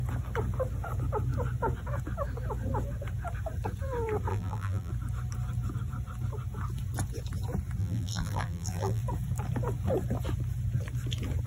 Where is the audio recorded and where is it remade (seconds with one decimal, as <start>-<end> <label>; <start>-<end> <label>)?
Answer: 0.0-4.3 recorded; 4.3-4.9 remade; 4.9-7.8 recorded; 7.8-9.0 remade; 9.0-11.5 recorded